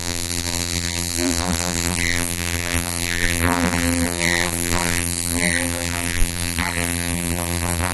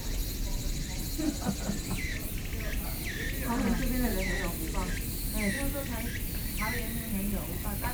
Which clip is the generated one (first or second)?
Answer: first